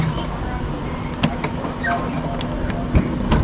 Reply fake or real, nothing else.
real